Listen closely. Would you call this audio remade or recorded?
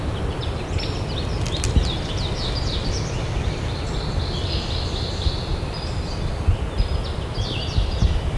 recorded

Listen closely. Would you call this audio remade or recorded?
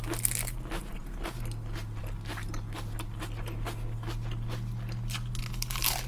recorded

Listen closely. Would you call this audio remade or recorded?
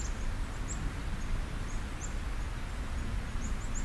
recorded